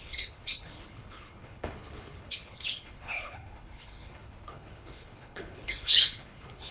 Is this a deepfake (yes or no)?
yes